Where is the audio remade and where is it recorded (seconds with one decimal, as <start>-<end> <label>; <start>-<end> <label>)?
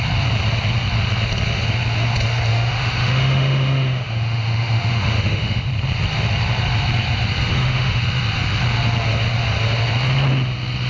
0.0-2.5 recorded; 2.5-5.7 remade; 5.7-7.5 recorded; 7.5-8.0 remade; 8.0-10.9 recorded